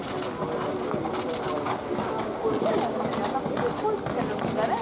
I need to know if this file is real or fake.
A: real